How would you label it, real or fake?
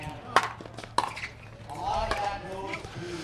real